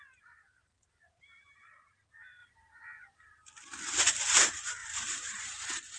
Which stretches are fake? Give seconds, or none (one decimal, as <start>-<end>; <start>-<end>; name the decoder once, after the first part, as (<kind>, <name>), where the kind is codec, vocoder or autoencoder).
0.0-2.4 (vocoder, BigVGAN v2); 4.0-6.0